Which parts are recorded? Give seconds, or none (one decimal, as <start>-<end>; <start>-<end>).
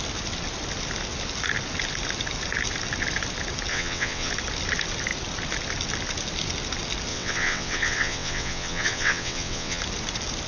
0.0-3.7; 4.3-7.1; 9.8-10.5